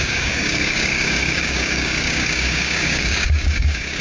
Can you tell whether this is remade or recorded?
remade